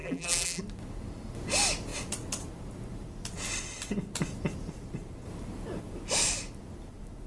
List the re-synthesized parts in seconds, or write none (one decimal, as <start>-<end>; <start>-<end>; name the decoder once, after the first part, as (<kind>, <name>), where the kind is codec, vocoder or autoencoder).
0.0-0.6 (vocoder, BigVGAN v2)